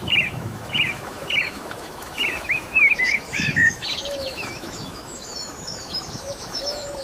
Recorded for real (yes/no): no